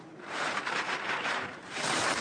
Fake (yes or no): yes